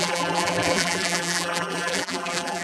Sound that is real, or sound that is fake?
fake